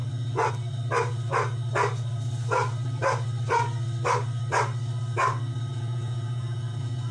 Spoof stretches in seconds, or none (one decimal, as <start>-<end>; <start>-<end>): 5.7-7.1